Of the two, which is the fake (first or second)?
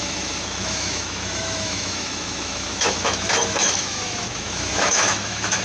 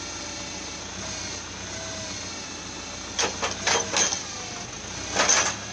first